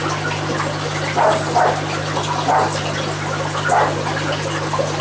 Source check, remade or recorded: recorded